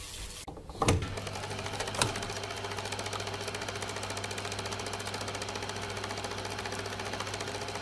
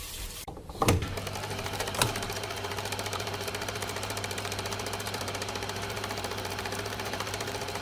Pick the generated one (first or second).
second